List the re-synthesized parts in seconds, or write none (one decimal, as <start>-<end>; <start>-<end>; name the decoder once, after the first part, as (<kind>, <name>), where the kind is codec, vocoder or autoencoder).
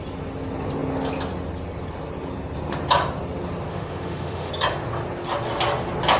3.7-4.5 (autoencoder, DAC-VAE)